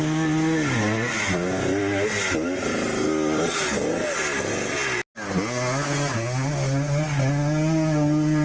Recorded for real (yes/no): yes